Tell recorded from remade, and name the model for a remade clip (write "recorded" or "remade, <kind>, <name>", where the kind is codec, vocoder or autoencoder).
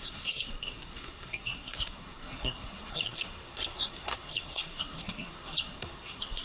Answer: remade, codec, SNAC